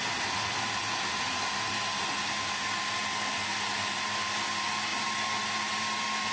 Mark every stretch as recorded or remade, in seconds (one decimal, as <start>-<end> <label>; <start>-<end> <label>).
0.0-6.3 recorded